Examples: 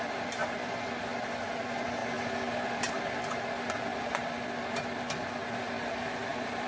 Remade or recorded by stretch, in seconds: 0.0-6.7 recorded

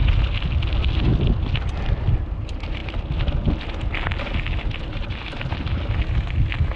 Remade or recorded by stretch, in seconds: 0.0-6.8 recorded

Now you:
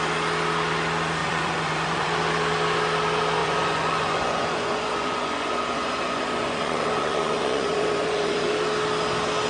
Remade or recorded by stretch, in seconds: 0.0-1.2 recorded; 1.2-2.1 remade; 2.1-3.4 recorded; 3.4-8.5 remade; 8.5-9.5 recorded

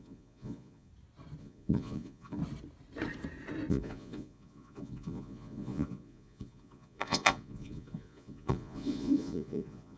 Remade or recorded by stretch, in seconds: 0.0-0.9 remade; 0.9-1.4 recorded; 1.4-2.4 remade; 2.4-3.7 recorded; 3.7-10.0 remade

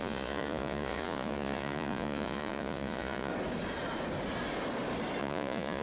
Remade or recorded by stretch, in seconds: 0.0-3.3 remade; 3.3-5.2 recorded; 5.2-5.8 remade